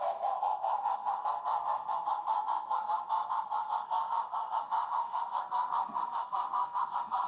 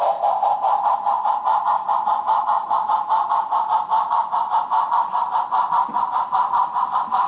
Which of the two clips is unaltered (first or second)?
second